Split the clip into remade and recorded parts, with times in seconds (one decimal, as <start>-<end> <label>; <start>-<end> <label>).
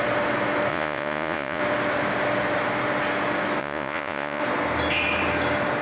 0.0-0.7 recorded; 0.7-1.6 remade; 1.6-3.6 recorded; 3.6-4.4 remade; 4.4-5.8 recorded